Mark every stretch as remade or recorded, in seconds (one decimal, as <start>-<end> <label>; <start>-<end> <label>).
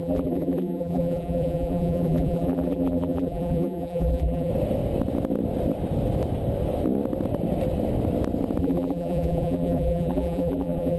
0.0-4.5 remade; 4.5-8.6 recorded; 8.6-11.0 remade